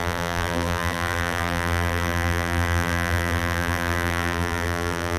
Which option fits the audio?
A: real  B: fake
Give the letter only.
B